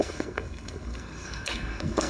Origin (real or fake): fake